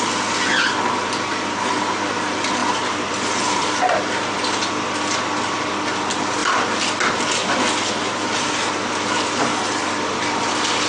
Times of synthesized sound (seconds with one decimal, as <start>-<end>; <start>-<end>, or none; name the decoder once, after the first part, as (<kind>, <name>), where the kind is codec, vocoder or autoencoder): none